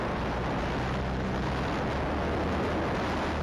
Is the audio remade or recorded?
recorded